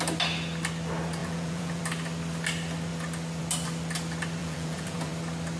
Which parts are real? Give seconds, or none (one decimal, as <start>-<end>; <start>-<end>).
0.0-1.2; 1.8-4.4; 5.1-5.6